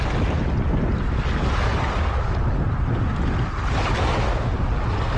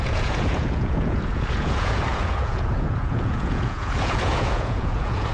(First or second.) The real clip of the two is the first